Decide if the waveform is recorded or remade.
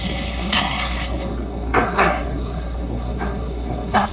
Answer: remade